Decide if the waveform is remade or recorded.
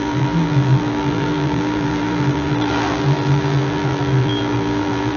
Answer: remade